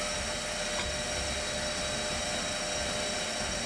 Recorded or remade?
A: recorded